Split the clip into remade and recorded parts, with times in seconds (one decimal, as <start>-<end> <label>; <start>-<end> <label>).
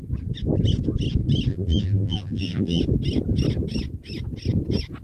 0.0-1.5 recorded; 1.5-2.8 remade; 2.8-5.0 recorded